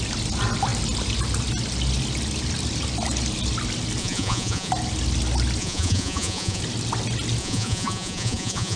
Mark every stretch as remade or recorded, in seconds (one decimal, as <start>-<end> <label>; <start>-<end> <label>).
0.0-4.0 recorded; 4.0-4.7 remade; 4.7-5.6 recorded; 5.6-6.6 remade; 6.6-7.4 recorded; 7.4-8.8 remade